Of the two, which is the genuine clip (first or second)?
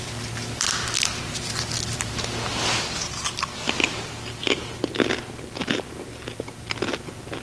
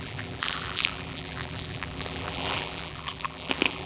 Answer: first